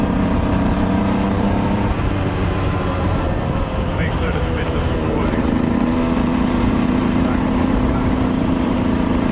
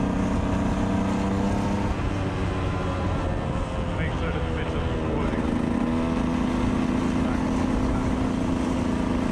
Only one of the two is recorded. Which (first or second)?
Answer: second